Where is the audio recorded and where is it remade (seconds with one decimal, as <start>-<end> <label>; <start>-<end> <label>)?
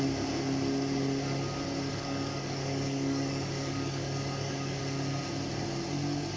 0.0-1.9 recorded; 1.9-4.8 remade; 4.8-6.4 recorded